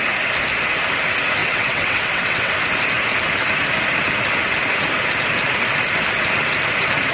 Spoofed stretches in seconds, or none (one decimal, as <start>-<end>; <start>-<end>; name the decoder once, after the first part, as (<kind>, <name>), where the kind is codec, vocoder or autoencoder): 1.4-2.5 (vocoder, WaveNeXt)